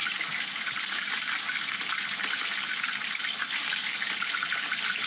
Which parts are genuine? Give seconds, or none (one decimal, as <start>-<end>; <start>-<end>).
0.0-5.1